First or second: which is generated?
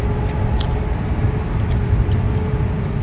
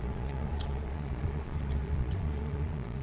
second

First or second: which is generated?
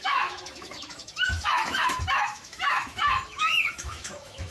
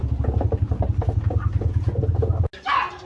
first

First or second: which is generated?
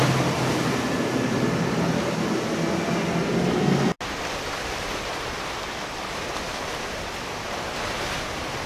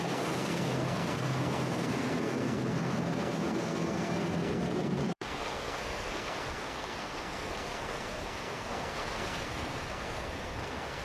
second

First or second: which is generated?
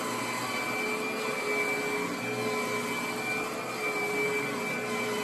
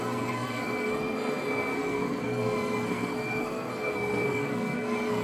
second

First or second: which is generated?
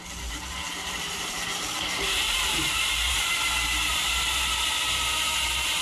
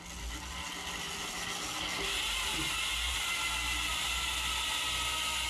first